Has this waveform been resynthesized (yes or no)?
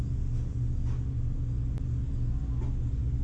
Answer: no